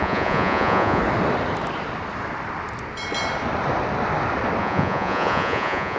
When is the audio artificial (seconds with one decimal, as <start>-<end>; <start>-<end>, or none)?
0.0-1.0; 4.6-6.0